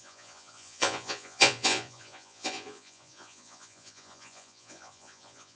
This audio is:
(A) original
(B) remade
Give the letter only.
B